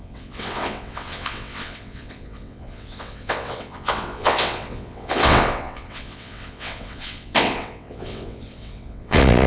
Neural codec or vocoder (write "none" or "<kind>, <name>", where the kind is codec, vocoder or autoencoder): vocoder, WaveNeXt